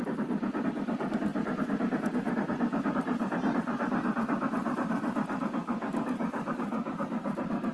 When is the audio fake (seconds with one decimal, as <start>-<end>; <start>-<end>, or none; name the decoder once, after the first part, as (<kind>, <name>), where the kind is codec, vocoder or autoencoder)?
5.6-7.2 (codec, DAC)